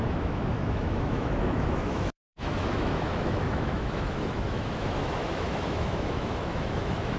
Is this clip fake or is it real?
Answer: fake